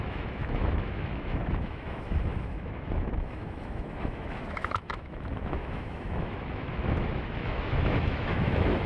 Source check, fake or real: fake